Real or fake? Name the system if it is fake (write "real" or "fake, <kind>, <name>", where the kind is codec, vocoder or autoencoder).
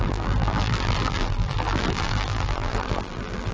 fake, vocoder, BigVGAN v2